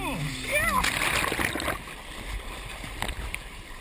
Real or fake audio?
real